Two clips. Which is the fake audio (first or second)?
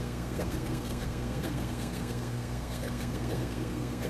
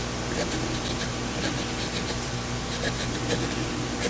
first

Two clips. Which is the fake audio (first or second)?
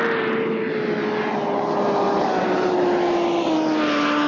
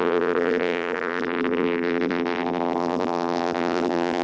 second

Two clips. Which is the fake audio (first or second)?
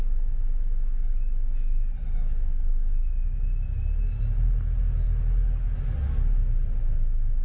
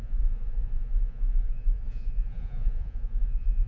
second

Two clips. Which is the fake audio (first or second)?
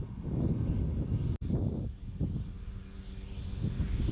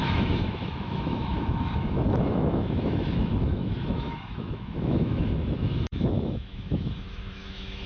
second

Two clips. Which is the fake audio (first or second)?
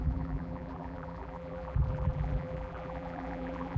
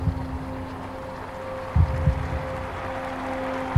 first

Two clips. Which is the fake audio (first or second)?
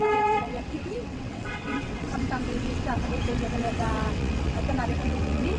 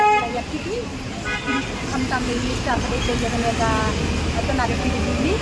first